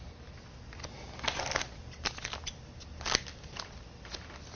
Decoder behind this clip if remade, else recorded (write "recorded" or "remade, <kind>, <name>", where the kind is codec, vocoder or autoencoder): recorded